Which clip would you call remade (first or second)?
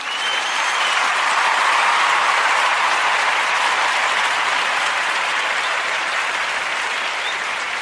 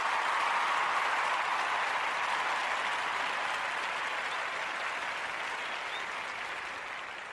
first